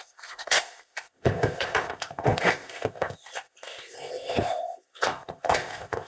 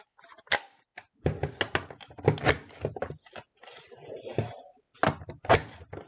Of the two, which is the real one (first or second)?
second